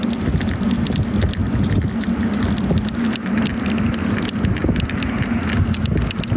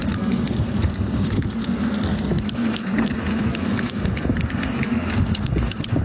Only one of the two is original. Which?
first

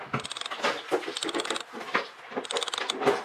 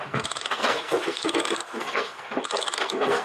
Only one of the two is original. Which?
first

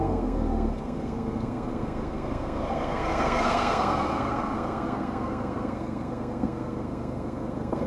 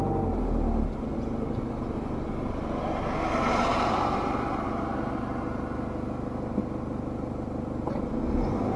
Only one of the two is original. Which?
second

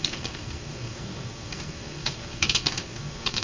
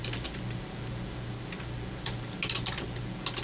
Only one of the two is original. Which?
second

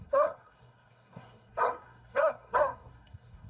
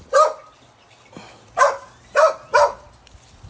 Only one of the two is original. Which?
second